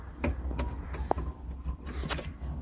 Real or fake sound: real